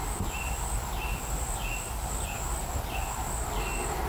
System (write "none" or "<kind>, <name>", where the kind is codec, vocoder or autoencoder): none